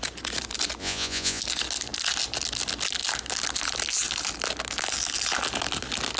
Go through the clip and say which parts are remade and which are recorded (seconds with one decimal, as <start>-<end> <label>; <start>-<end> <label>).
0.0-0.8 recorded; 0.8-1.4 remade; 1.4-6.2 recorded